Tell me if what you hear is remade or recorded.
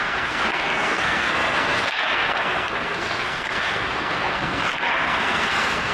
remade